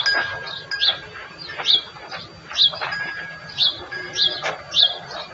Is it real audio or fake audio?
real